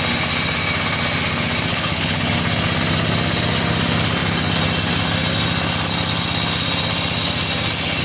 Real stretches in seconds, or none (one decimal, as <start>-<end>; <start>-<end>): 0.0-1.7; 2.3-8.0